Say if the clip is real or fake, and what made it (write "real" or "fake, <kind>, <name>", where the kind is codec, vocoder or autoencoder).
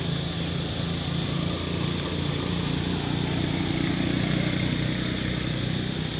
real